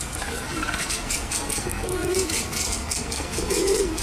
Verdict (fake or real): fake